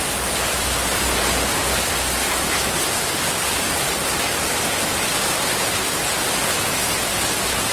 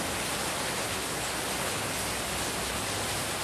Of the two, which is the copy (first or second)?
first